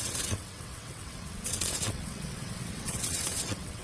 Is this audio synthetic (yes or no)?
yes